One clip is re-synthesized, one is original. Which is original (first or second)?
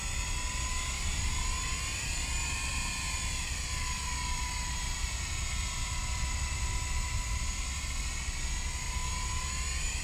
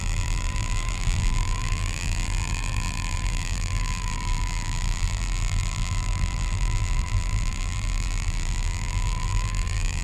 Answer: first